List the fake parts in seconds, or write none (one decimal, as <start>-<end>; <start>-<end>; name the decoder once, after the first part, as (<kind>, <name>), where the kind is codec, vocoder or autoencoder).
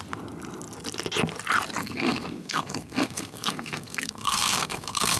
1.8-5.2 (codec, SNAC)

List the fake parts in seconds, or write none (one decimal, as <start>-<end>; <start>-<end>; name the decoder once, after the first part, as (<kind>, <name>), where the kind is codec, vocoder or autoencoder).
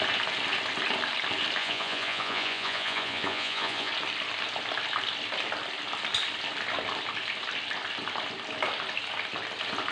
1.6-3.9 (vocoder, Vocos)